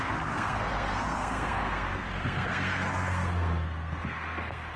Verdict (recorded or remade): remade